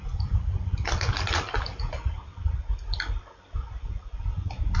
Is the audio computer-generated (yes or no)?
no